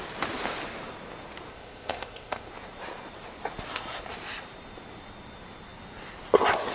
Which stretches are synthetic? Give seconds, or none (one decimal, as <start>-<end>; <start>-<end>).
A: 1.5-2.5